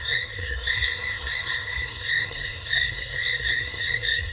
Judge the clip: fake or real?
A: fake